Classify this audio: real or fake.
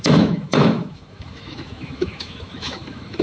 fake